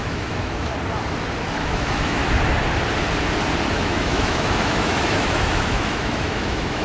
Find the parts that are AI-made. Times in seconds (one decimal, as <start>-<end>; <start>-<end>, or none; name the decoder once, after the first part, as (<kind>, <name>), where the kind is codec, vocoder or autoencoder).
0.0-0.7 (autoencoder, DAC-VAE); 1.5-2.2; 3.7-6.8